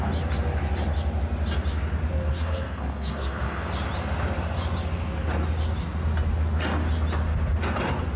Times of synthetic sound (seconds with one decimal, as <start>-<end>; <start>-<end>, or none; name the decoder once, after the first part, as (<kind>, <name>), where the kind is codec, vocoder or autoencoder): 2.3-3.7 (codec, SNAC)